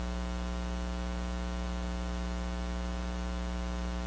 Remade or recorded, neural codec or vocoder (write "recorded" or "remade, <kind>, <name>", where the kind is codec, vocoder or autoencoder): recorded